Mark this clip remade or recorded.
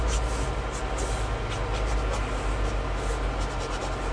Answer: recorded